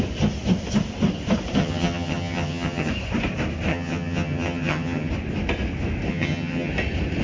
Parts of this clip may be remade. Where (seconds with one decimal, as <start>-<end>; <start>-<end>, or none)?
1.6-2.9; 3.7-5.1; 6.1-6.7